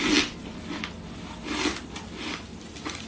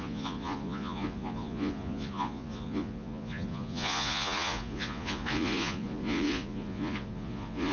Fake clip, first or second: second